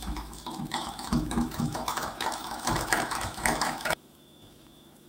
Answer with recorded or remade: remade